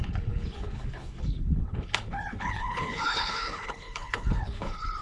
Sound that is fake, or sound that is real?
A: fake